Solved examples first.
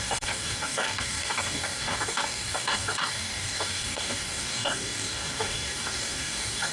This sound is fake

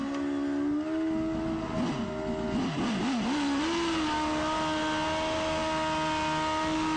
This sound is real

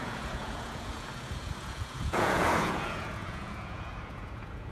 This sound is fake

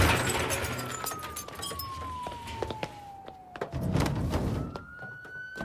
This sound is real